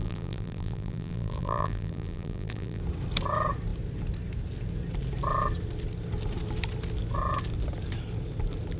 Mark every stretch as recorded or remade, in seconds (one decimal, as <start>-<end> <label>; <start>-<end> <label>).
0.0-2.8 remade; 2.8-8.8 recorded